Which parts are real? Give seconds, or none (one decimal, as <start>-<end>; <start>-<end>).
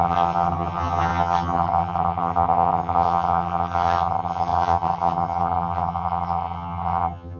none